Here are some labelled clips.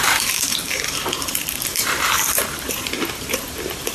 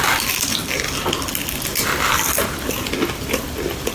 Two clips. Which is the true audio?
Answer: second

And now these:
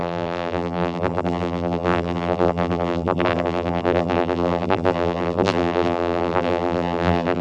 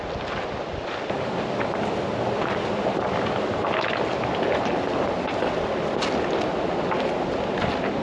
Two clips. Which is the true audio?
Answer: second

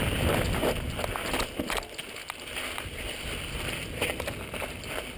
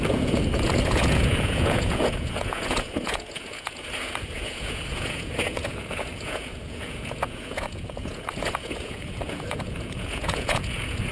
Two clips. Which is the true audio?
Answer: first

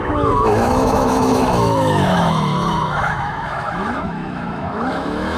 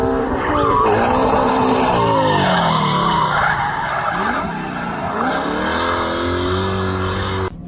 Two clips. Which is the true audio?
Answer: second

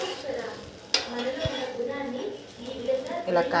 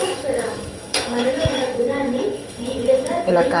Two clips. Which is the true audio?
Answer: first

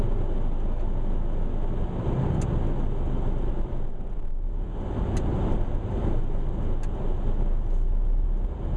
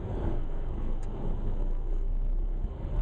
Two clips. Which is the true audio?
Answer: first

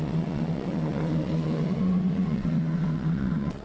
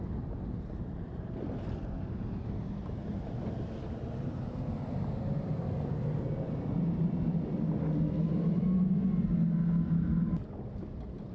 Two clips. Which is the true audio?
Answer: second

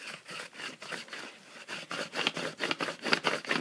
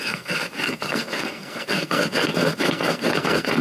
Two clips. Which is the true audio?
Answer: first